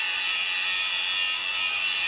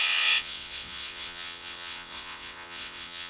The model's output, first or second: second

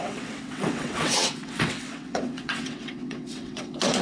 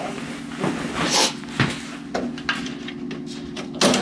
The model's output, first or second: first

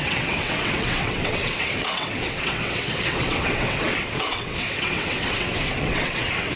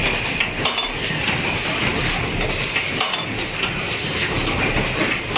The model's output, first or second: first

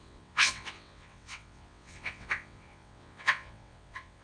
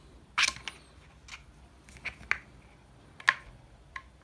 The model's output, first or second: first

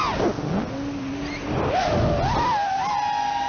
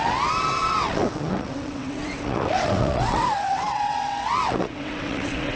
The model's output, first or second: second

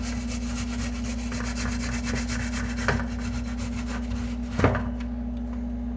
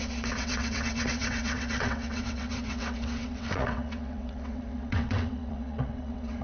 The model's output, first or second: second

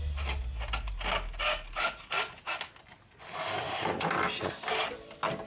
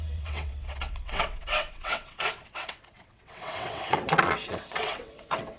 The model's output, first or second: second